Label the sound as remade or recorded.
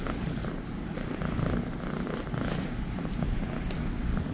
recorded